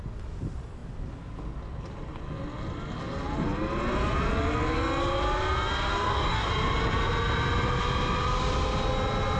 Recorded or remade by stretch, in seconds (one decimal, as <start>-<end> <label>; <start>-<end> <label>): 0.0-5.9 recorded; 5.9-6.5 remade; 6.5-9.4 recorded